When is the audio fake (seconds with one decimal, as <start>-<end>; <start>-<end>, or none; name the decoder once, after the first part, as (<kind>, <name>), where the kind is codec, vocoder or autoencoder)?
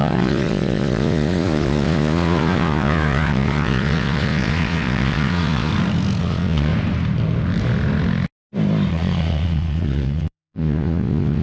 0.0-5.7 (vocoder, Vocos); 6.2-6.7; 8.9-11.4